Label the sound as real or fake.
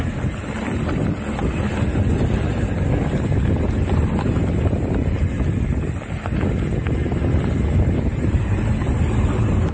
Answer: real